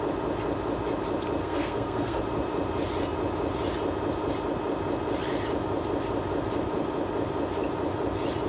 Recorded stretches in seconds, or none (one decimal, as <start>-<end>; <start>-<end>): 0.0-1.4; 2.2-8.5